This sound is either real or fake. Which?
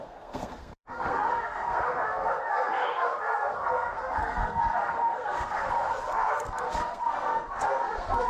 fake